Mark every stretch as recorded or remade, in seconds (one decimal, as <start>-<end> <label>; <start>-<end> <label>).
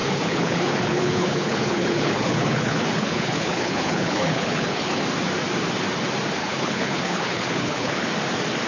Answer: 0.0-5.0 remade; 5.0-6.4 recorded; 6.4-8.1 remade; 8.1-8.7 recorded